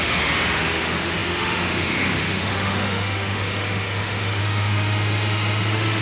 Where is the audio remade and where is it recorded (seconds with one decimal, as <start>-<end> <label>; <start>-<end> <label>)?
0.0-6.0 remade